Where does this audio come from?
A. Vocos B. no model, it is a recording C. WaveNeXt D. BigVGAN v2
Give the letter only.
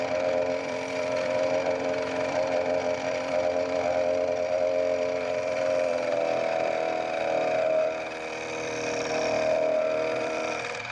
D